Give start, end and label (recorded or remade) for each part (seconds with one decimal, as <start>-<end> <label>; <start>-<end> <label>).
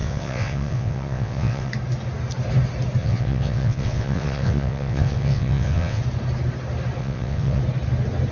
0.0-1.7 remade; 1.7-3.0 recorded; 3.0-6.0 remade; 6.0-7.0 recorded; 7.0-7.6 remade; 7.6-8.3 recorded